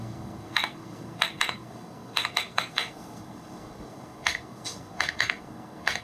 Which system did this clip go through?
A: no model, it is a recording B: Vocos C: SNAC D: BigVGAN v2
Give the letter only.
C